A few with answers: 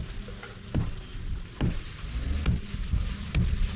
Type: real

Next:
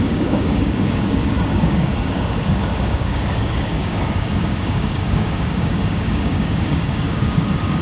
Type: fake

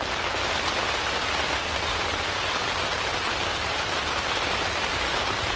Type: real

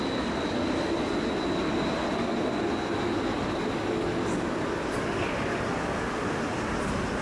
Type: real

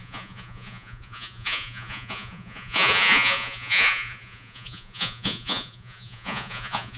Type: fake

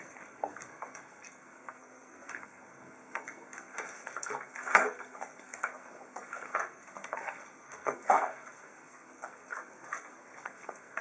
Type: fake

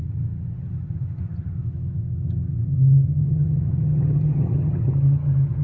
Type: fake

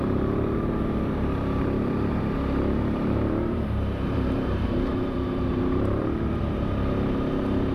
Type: fake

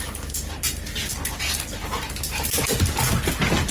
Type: real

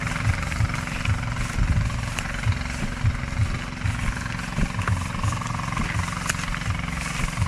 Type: real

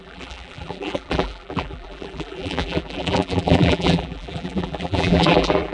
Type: fake